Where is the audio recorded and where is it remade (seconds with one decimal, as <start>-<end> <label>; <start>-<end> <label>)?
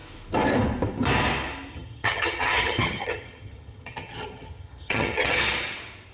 0.0-1.7 recorded; 1.7-5.4 remade; 5.4-6.1 recorded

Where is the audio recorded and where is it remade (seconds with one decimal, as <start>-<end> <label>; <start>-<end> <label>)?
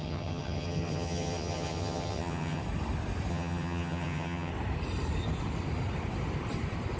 0.0-2.6 remade; 2.6-3.3 recorded; 3.3-4.5 remade; 4.5-7.0 recorded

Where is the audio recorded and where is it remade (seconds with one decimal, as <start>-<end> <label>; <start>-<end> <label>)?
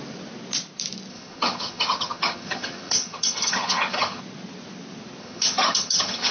0.0-1.1 recorded; 1.1-4.2 remade; 4.2-5.2 recorded; 5.2-6.3 remade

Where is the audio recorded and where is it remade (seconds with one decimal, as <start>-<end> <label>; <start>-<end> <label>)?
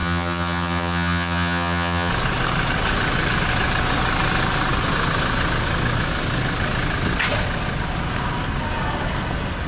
0.0-2.1 remade; 2.1-9.7 recorded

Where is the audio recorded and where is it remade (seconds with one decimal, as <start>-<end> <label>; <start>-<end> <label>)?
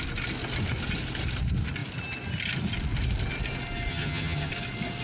0.0-3.9 recorded; 3.9-4.5 remade; 4.5-5.0 recorded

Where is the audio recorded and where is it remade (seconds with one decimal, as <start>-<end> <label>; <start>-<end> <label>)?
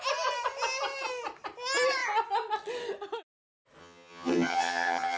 0.0-3.8 recorded; 3.8-5.2 remade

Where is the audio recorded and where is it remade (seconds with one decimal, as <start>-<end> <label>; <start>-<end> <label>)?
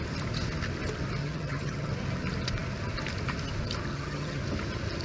0.0-1.2 recorded; 1.2-1.9 remade; 1.9-3.9 recorded; 3.9-4.4 remade; 4.4-5.0 recorded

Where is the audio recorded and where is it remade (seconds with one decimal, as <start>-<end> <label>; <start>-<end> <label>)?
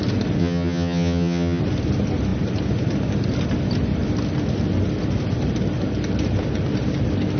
0.0-0.4 recorded; 0.4-1.6 remade; 1.6-7.4 recorded